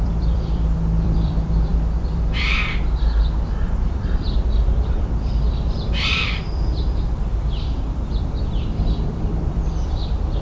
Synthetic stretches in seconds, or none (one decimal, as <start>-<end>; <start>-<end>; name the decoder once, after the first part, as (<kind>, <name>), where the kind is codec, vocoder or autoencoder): 0.0-10.4 (vocoder, BigVGAN v2)